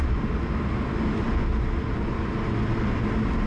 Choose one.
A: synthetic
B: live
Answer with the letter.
B